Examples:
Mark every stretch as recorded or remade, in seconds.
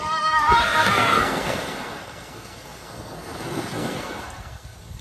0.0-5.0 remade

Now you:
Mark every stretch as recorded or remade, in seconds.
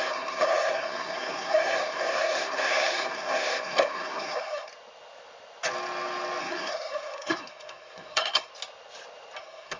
0.0-4.7 remade; 4.7-6.4 recorded; 6.4-8.5 remade; 8.5-9.4 recorded; 9.4-9.8 remade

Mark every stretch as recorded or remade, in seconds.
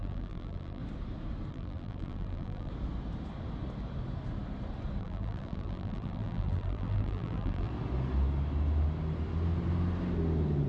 0.0-0.8 remade; 0.8-1.5 recorded; 1.5-2.7 remade; 2.7-5.0 recorded; 5.0-7.7 remade; 7.7-10.7 recorded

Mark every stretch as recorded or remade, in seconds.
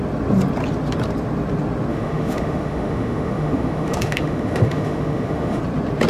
0.0-1.9 recorded; 1.9-5.6 remade; 5.6-6.1 recorded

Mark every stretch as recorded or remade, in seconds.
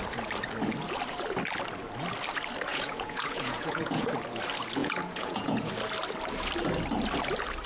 0.0-2.7 recorded; 2.7-4.1 remade; 4.1-4.8 recorded; 4.8-5.7 remade; 5.7-7.7 recorded